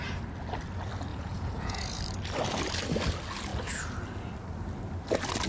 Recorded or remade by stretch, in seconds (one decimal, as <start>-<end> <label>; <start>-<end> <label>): 0.0-1.1 recorded; 1.1-2.0 remade; 2.0-5.5 recorded